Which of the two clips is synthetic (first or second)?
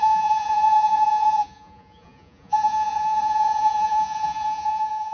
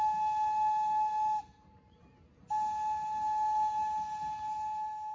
first